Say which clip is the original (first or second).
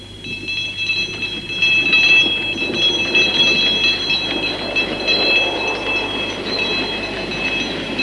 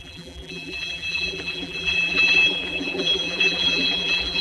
first